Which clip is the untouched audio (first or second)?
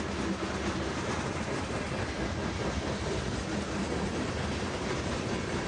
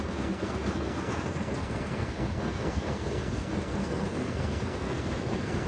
first